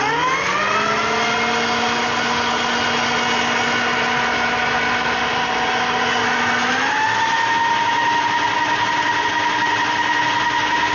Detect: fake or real real